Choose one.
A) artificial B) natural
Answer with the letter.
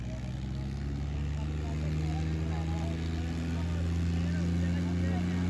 B